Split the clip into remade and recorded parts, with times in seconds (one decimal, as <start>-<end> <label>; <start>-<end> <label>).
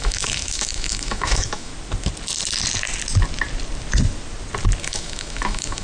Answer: 0.0-1.7 remade; 1.7-4.8 recorded; 4.8-5.8 remade